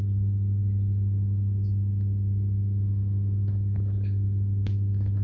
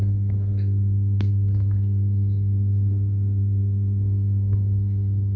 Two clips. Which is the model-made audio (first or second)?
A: second